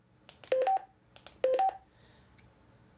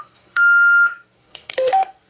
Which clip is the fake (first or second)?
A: second